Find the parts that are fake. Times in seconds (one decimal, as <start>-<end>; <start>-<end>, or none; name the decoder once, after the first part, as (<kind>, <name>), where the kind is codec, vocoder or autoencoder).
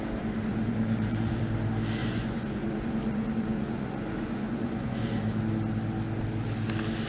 0.5-1.4 (vocoder, Vocos); 2.0-5.4